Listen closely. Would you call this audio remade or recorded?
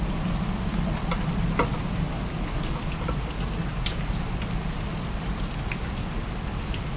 recorded